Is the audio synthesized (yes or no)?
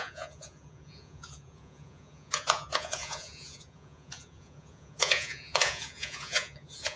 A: yes